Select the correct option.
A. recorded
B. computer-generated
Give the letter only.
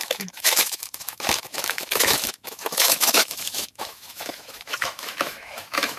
B